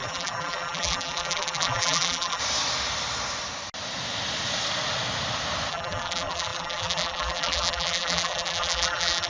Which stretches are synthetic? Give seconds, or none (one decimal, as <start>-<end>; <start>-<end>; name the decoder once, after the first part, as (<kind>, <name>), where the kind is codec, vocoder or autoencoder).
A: 0.0-2.4 (vocoder, BigVGAN v2); 5.7-9.3